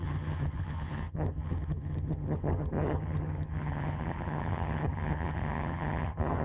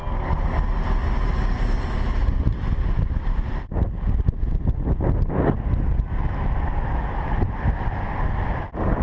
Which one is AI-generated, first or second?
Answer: first